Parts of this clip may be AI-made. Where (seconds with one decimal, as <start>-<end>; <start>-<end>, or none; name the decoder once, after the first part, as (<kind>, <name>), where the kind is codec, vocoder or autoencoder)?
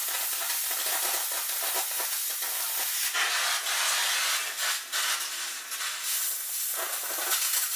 none